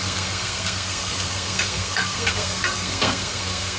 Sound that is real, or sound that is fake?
fake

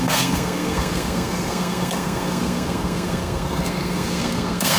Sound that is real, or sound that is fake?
fake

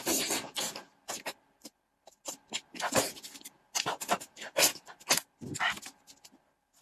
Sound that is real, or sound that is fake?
real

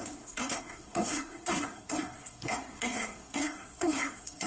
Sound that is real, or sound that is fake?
fake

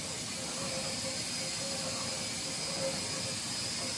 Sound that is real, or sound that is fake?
real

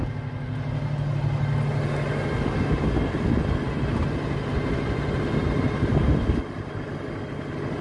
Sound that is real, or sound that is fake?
real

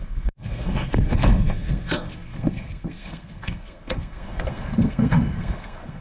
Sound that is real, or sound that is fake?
fake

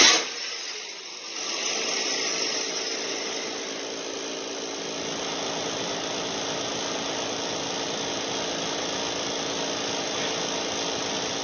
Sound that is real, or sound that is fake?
real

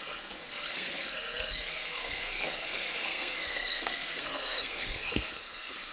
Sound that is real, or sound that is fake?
fake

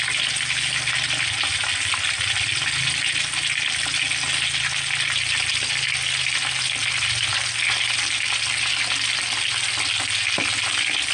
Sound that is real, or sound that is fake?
real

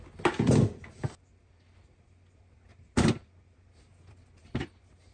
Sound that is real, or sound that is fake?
real